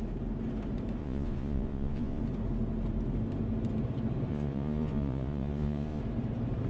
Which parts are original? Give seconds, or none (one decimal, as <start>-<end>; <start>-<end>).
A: 0.0-1.0; 2.2-4.3; 6.0-6.7